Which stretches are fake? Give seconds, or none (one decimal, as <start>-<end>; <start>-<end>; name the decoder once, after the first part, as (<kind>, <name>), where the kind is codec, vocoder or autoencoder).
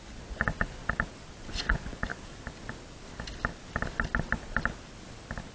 0.0-0.8 (vocoder, Vocos); 1.3-2.1